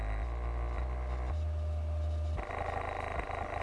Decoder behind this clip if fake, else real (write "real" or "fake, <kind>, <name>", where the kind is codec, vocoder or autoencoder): real